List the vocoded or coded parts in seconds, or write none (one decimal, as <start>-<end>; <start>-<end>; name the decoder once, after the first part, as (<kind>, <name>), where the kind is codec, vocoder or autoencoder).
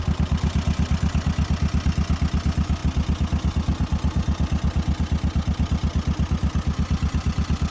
none